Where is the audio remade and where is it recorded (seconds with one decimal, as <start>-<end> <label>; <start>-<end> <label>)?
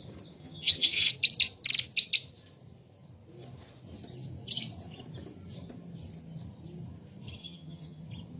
0.0-0.4 recorded; 0.4-1.1 remade; 1.1-7.4 recorded; 7.4-8.0 remade; 8.0-8.4 recorded